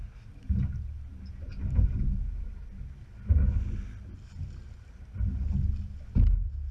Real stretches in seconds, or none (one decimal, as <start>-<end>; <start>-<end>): 0.0-6.7